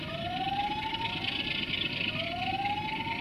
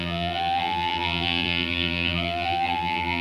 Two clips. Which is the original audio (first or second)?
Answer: first